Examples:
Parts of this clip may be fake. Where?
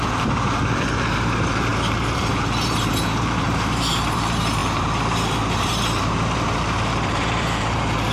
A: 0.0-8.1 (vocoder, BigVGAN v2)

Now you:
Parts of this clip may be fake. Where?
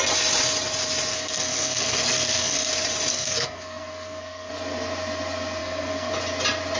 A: 1.1-2.7 (codec, SNAC); 3.1-4.5; 5.6-6.1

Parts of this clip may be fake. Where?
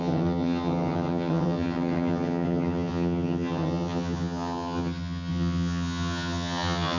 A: 0.0-7.0 (vocoder, HiFi-GAN)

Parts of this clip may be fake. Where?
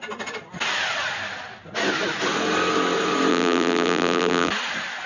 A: 3.3-4.5 (vocoder, BigVGAN v2)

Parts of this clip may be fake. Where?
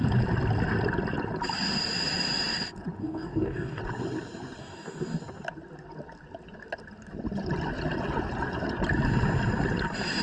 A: 3.0-3.8 (codec, DAC); 4.6-5.2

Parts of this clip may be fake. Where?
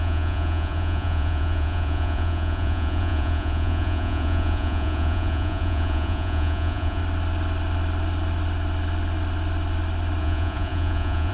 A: 0.0-7.0 (vocoder, Vocos); 10.2-11.3